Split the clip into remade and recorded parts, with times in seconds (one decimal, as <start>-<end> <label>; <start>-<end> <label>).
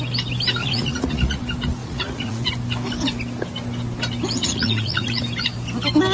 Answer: 0.0-0.6 recorded; 0.6-1.4 remade; 1.4-1.8 recorded; 1.8-2.5 remade; 2.5-4.4 recorded; 4.4-5.2 remade; 5.2-6.1 recorded